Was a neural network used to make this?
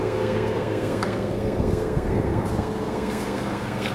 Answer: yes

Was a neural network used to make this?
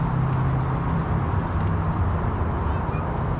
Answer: no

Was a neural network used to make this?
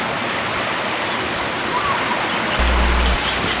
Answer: no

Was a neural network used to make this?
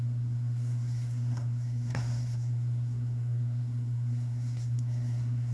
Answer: yes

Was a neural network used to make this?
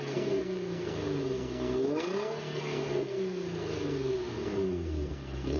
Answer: yes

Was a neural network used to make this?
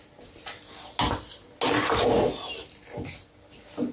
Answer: no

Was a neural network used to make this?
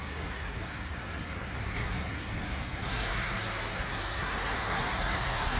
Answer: yes